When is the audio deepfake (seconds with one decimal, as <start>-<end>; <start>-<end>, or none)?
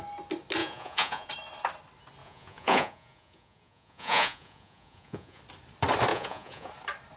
0.6-1.3; 2.2-5.4; 6.1-6.7